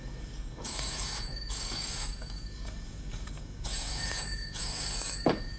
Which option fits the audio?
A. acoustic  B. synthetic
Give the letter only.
B